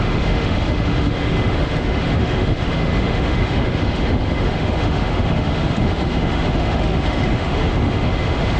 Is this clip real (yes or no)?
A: no